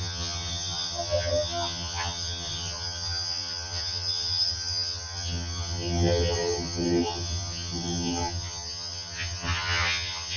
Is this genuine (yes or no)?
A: no